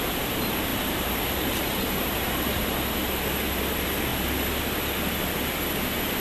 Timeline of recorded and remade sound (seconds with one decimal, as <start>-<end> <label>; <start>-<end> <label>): 0.0-0.7 recorded; 0.7-2.6 remade; 2.6-6.2 recorded